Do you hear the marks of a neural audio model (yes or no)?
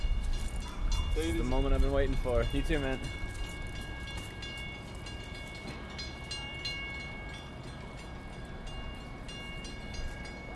no